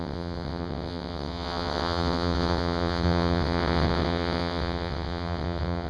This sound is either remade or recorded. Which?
remade